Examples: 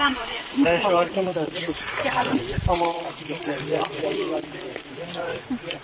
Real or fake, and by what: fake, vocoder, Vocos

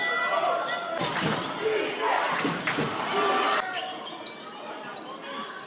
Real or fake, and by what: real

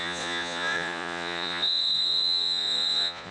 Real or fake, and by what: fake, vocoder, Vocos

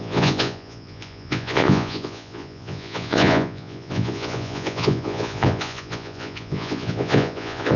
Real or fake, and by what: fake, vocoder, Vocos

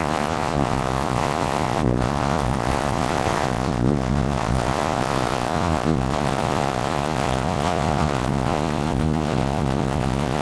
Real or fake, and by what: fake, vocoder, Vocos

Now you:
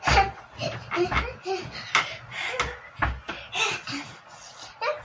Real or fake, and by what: real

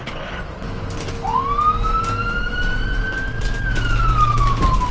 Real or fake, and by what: real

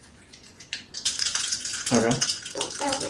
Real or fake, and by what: fake, vocoder, Vocos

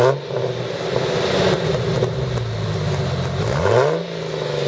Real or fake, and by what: real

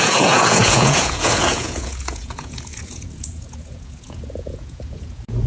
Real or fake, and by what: fake, vocoder, Vocos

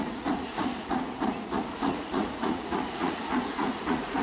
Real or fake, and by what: fake, vocoder, Vocos